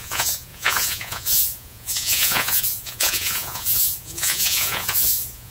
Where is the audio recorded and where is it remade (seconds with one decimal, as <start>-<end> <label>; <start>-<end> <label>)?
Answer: 0.0-5.5 remade